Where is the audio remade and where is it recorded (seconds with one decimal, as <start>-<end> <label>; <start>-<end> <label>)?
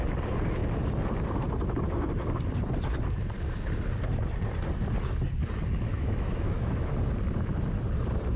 0.0-5.9 recorded; 5.9-6.9 remade; 6.9-8.4 recorded